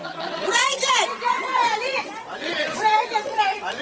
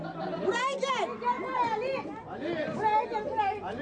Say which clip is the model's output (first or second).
first